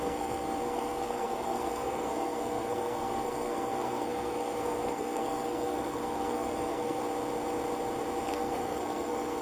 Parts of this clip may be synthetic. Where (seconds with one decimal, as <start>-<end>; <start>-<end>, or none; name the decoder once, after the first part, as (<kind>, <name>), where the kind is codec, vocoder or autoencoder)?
0.0-7.0 (codec, SNAC); 8.2-9.4